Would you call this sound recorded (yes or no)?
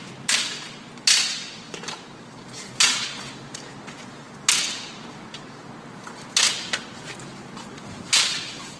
yes